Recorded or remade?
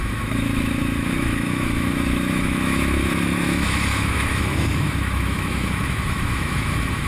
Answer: remade